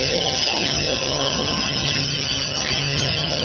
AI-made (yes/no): yes